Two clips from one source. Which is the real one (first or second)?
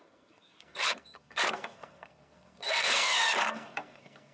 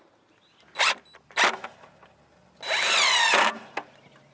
second